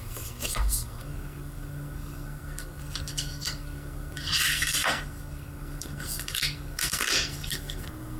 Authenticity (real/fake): fake